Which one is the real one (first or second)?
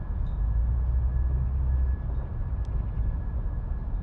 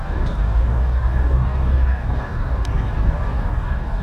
first